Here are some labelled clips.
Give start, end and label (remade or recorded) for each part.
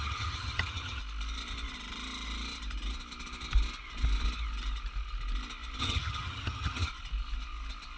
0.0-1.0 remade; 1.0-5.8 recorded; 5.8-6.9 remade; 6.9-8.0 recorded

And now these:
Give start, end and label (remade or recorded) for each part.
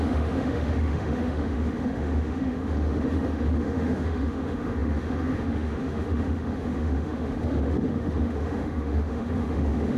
0.0-10.0 remade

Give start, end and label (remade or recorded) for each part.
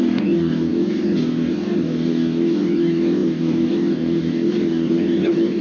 0.0-5.6 remade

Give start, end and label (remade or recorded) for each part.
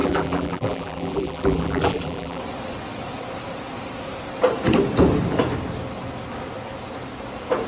0.0-2.4 remade; 2.4-7.7 recorded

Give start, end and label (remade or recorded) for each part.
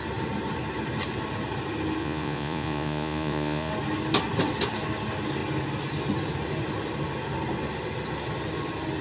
0.0-2.0 recorded; 2.0-3.7 remade; 3.7-9.0 recorded